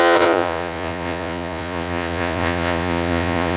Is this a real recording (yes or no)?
no